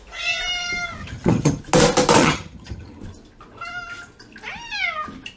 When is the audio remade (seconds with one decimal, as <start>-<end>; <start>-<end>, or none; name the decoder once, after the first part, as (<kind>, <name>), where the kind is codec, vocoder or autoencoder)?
1.0-1.6 (vocoder, HiFi-GAN); 2.2-3.0